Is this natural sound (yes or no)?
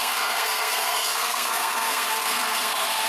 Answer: no